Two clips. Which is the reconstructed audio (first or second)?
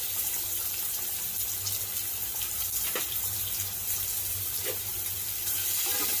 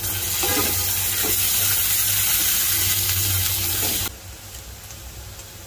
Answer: first